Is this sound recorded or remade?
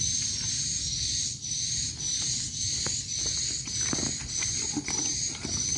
recorded